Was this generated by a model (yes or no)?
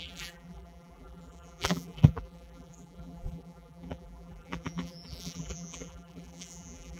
yes